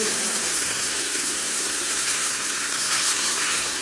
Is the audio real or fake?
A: fake